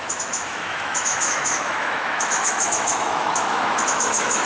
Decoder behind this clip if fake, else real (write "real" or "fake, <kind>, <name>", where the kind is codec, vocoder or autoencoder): fake, autoencoder, DAC-VAE